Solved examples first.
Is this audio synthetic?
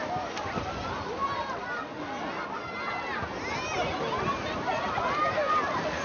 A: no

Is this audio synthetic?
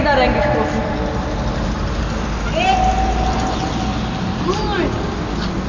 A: no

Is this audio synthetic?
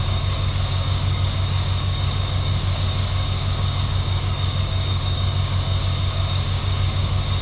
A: yes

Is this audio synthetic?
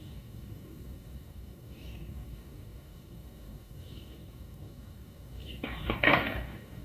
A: yes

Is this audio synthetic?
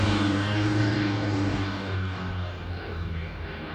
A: yes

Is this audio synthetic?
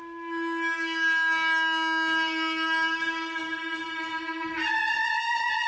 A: no